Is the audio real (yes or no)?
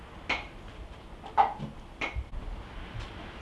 yes